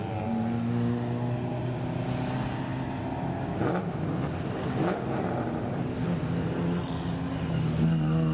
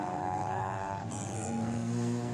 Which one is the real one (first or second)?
first